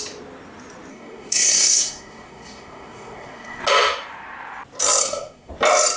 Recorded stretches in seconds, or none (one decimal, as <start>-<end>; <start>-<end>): 0.0-0.9; 3.6-5.0; 5.5-6.0

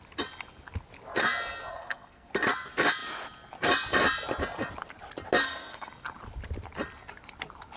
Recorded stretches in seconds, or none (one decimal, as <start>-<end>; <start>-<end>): 0.0-1.7; 2.3-5.4; 5.9-7.8

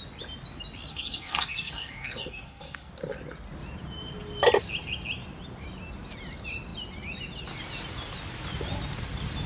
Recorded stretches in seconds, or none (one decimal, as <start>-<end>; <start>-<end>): 0.0-0.9; 2.9-9.5

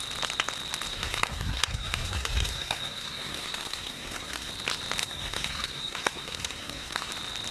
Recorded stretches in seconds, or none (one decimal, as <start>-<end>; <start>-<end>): 0.0-0.9; 4.5-5.0; 7.1-7.5

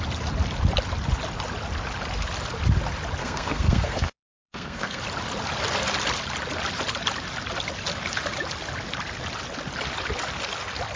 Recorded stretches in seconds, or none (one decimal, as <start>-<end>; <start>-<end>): 0.0-3.2; 5.0-11.0